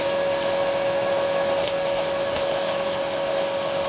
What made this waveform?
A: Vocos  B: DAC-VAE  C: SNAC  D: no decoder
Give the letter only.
B